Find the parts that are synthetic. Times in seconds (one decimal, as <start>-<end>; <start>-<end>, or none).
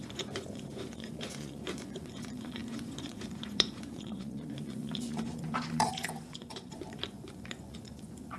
0.0-8.4